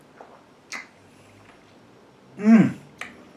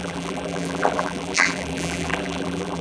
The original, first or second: first